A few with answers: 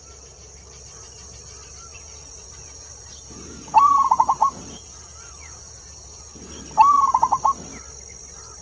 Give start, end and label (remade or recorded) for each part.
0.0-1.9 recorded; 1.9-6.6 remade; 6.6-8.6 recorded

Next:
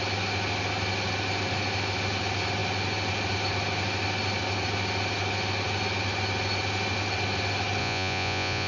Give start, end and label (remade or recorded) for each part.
0.0-7.8 recorded; 7.8-8.7 remade